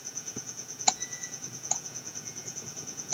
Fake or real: fake